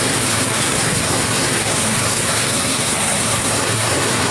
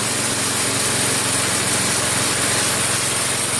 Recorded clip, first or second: second